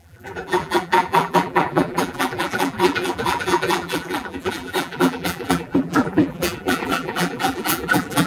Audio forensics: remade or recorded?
remade